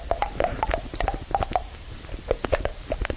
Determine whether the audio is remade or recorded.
recorded